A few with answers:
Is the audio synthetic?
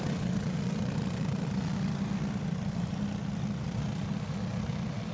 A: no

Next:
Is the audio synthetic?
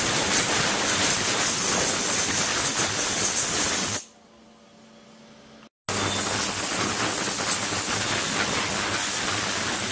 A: no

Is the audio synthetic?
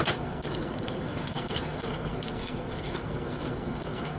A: yes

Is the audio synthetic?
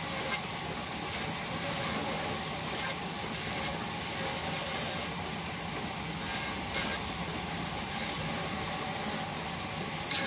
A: no